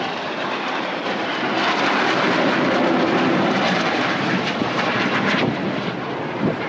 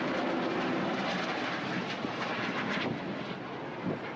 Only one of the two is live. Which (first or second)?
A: second